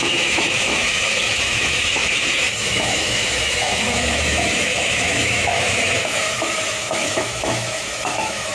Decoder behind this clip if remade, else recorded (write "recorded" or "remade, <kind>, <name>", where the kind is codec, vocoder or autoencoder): remade, autoencoder, DAC-VAE